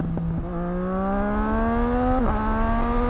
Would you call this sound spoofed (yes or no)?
no